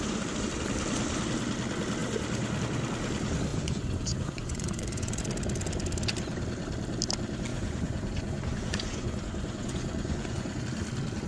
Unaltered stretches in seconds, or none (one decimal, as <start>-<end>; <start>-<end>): 0.0-3.5; 5.2-7.5; 10.6-11.3